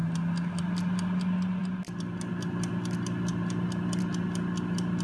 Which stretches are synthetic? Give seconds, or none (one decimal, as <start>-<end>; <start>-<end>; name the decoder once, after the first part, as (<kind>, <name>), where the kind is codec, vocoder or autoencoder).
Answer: none